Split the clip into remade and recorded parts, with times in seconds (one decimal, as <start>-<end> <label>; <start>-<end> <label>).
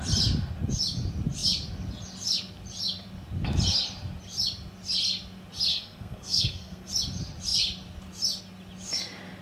0.0-5.7 recorded; 5.7-6.9 remade; 6.9-9.4 recorded